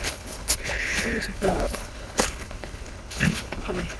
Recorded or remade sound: remade